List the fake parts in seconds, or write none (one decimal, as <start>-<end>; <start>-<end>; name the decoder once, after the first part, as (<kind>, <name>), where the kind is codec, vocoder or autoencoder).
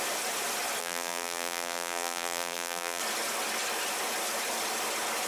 0.8-3.0 (vocoder, BigVGAN v2)